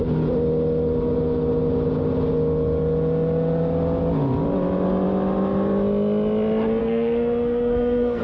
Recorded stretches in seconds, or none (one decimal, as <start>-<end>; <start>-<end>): 0.0-6.8